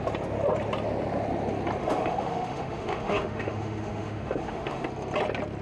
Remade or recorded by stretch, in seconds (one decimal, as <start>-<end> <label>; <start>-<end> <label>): 0.0-1.8 recorded; 1.8-4.9 remade; 4.9-5.6 recorded